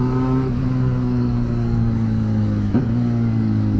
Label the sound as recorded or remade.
remade